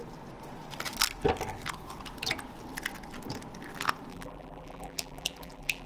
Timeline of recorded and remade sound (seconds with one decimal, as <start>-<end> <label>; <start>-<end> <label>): 0.0-4.1 recorded; 4.1-5.9 remade